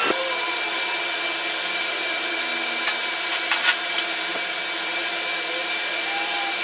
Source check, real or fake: real